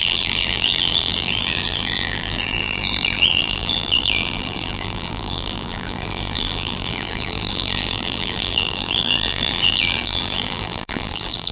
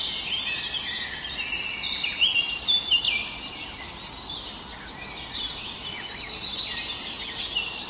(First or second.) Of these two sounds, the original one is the second